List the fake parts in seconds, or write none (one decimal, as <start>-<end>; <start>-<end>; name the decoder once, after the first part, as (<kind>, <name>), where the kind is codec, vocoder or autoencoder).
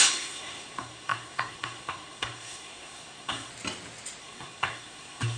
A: 0.0-3.5 (codec, SNAC); 4.2-5.4